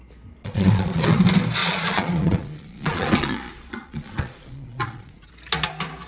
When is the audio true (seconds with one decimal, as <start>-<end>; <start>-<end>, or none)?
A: 0.0-0.4; 1.2-1.6; 5.3-6.1